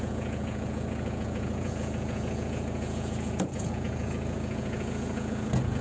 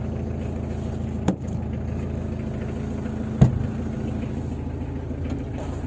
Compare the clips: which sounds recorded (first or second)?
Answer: second